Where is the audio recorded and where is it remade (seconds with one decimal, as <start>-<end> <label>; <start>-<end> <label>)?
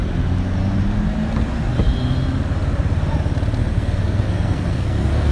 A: 0.0-3.6 recorded; 3.6-5.3 remade